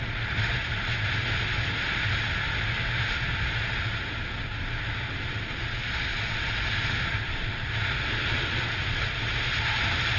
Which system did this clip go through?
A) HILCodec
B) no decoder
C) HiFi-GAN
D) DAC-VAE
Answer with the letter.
B